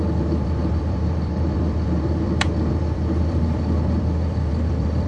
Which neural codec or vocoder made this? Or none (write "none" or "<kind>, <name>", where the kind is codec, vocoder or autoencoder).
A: vocoder, BigVGAN v2